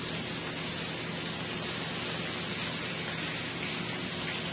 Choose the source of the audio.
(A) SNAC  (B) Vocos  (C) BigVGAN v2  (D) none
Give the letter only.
D